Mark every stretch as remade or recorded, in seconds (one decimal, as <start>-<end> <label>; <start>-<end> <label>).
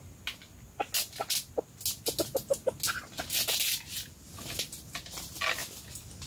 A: 0.0-6.3 recorded